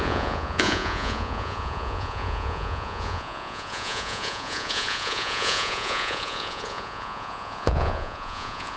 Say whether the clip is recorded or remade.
remade